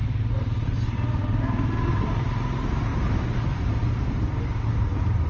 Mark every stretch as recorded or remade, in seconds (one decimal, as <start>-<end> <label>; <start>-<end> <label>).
0.0-2.3 remade; 2.3-2.9 recorded; 2.9-3.8 remade; 3.8-5.3 recorded